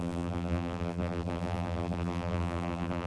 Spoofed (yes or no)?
yes